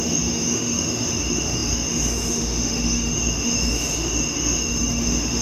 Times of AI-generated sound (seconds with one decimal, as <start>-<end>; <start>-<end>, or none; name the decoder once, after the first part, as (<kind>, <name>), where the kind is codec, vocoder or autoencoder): 0.0-5.4 (autoencoder, DAC-VAE)